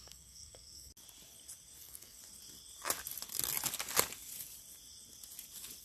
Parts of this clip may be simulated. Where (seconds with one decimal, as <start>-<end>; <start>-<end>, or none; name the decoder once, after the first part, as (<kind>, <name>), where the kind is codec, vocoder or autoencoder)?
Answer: 0.0-0.9 (codec, SNAC); 1.8-2.2